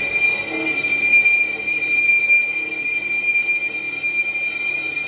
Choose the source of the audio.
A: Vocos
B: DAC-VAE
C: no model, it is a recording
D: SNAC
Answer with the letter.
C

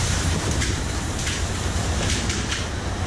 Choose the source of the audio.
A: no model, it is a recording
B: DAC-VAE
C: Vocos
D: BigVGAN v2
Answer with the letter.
D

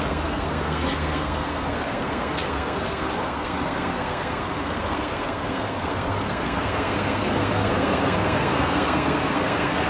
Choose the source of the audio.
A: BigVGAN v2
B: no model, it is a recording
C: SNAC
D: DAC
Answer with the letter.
C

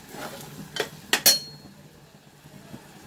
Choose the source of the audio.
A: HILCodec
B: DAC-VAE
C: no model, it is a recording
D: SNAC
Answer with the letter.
C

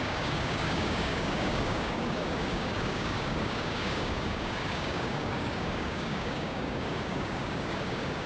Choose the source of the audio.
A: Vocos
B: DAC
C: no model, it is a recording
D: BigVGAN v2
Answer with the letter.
B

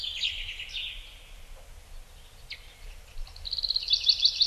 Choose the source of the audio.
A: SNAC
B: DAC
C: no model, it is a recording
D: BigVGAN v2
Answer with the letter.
C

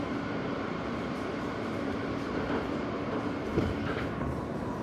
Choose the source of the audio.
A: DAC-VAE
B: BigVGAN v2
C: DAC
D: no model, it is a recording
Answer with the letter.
B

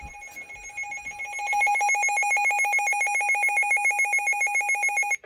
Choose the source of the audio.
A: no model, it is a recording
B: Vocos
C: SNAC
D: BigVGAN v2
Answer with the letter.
A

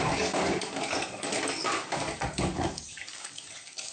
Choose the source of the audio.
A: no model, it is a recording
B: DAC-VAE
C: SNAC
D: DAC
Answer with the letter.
D